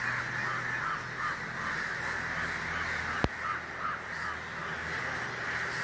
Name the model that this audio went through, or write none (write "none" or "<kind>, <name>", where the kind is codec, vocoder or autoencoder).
none